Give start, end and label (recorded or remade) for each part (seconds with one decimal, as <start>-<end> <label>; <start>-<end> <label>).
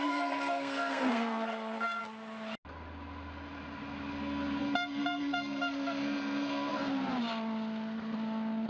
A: 0.0-2.0 remade; 2.0-4.6 recorded; 4.6-6.7 remade; 6.7-8.7 recorded